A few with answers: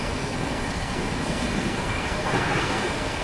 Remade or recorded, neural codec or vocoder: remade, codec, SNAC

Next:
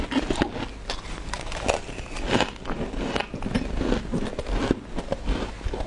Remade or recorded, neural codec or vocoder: recorded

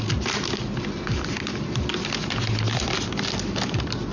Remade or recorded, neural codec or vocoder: recorded